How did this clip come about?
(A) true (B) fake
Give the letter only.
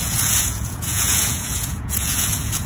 B